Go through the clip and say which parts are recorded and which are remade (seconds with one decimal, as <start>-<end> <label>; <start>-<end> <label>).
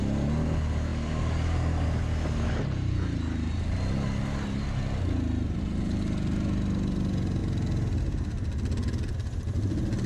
0.0-10.1 recorded